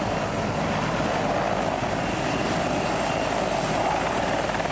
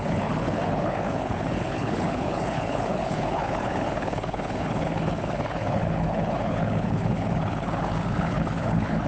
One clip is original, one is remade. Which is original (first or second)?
first